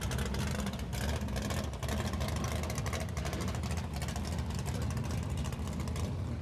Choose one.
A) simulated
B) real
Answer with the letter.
B